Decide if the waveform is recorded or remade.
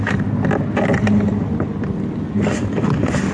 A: recorded